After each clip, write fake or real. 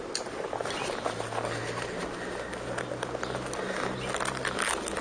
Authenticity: real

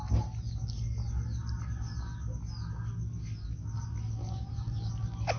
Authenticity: real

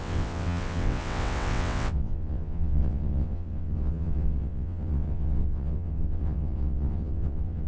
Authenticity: fake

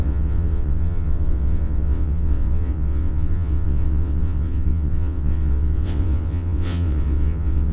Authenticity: fake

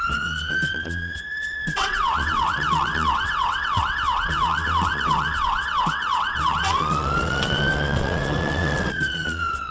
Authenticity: fake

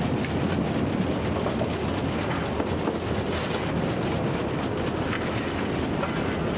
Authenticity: real